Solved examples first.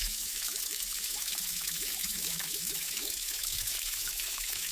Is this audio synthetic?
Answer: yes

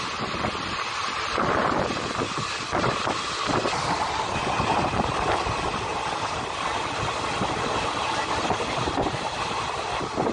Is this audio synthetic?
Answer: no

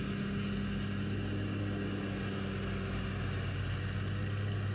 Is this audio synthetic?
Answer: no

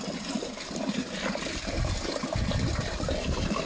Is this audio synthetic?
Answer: no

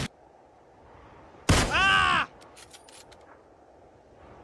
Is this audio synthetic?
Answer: no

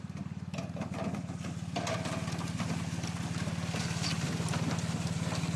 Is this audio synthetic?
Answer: no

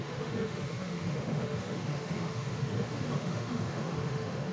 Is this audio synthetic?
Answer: yes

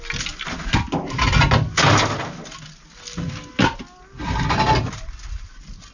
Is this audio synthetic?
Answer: no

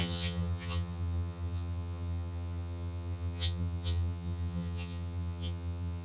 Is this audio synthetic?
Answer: yes